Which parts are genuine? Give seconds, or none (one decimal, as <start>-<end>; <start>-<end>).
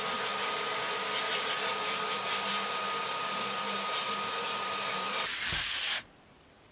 0.0-6.7